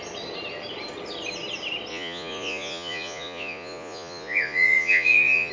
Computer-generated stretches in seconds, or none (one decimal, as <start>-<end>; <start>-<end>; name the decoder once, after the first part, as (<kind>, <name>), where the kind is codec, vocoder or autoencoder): 1.9-5.5 (vocoder, Vocos)